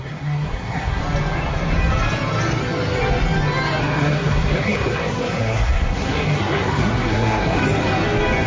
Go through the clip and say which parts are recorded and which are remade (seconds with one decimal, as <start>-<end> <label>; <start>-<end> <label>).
0.0-1.0 remade; 1.0-3.8 recorded; 3.8-7.6 remade; 7.6-8.5 recorded